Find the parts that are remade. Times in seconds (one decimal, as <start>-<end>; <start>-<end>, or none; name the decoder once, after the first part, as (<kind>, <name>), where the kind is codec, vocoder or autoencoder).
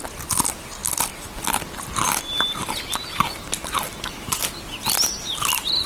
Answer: none